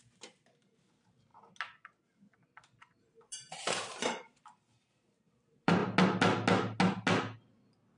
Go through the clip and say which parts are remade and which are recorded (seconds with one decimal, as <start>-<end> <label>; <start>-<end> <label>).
0.0-1.3 remade; 1.3-2.8 recorded; 2.8-5.8 remade; 5.8-7.5 recorded; 7.5-8.0 remade